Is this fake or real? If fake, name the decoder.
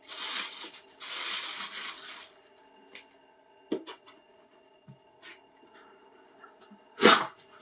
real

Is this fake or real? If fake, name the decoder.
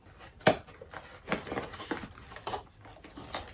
real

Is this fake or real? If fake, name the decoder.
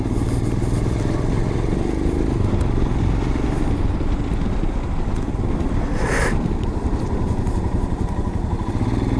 real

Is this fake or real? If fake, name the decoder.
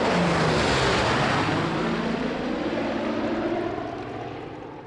real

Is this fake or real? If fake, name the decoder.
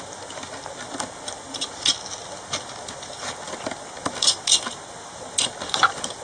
real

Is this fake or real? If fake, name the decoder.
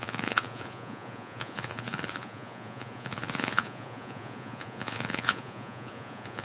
fake, vocoder, Vocos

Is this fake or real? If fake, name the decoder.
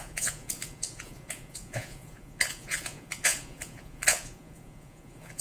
fake, vocoder, Vocos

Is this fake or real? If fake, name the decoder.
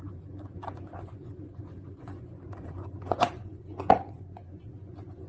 fake, vocoder, Vocos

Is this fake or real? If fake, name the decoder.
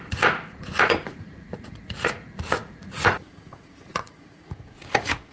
fake, vocoder, Vocos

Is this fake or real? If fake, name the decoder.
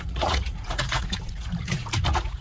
fake, vocoder, Vocos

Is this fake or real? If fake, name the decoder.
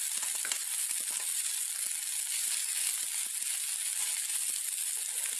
real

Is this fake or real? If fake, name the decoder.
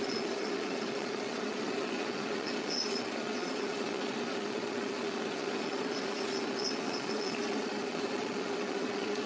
fake, vocoder, Vocos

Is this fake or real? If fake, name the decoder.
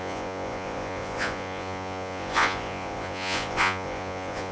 fake, vocoder, Vocos